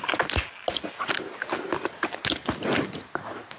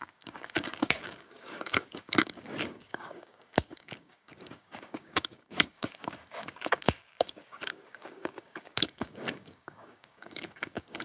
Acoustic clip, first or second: first